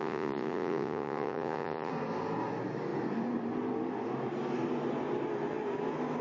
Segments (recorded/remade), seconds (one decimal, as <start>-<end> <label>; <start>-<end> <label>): 0.0-1.9 remade; 1.9-6.2 recorded